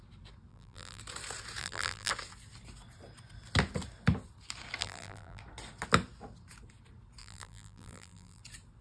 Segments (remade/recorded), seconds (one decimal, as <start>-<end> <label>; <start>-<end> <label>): 0.0-0.5 recorded; 0.5-1.0 remade; 1.0-1.6 recorded; 1.6-2.1 remade; 2.1-4.8 recorded; 4.8-5.4 remade; 5.4-7.2 recorded; 7.2-8.4 remade; 8.4-8.8 recorded